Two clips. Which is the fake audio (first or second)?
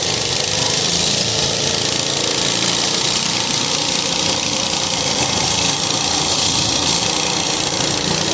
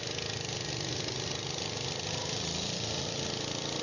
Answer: first